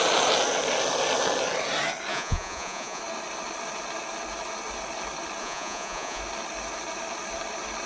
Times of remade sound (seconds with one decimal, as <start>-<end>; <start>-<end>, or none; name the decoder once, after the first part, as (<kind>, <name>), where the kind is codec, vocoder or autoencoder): 2.1-3.0 (vocoder, Vocos); 5.4-6.2